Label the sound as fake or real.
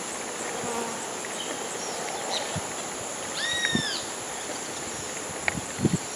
real